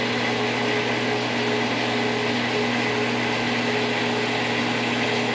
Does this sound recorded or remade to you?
recorded